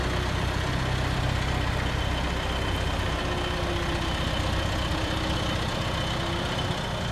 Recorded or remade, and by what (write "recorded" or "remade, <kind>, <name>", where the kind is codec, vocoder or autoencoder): recorded